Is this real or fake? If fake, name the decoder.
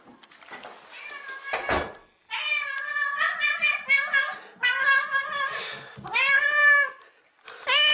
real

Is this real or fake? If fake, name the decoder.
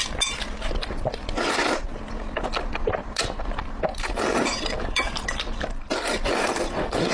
real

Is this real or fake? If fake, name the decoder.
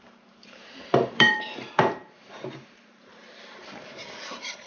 fake, vocoder, BigVGAN v2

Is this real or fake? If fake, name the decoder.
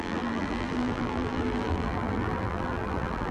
fake, vocoder, BigVGAN v2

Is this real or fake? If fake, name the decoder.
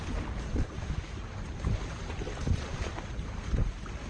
fake, vocoder, BigVGAN v2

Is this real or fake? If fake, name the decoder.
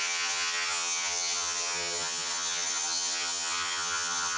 fake, vocoder, HiFi-GAN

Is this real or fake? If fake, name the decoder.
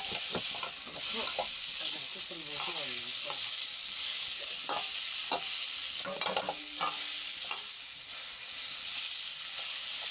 real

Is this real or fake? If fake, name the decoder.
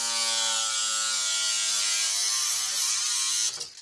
real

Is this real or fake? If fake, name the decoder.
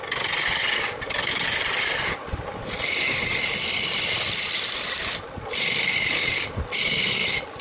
real